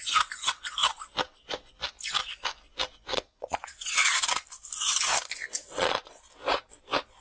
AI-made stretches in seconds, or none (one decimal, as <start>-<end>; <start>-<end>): 3.1-4.3; 5.6-6.2